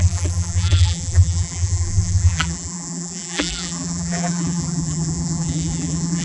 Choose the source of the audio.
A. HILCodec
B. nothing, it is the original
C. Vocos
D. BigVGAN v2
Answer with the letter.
D